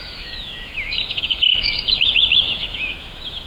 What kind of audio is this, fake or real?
fake